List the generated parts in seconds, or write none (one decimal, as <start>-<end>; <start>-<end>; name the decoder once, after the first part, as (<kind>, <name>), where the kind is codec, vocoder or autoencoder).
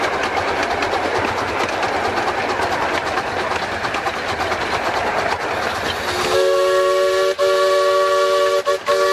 none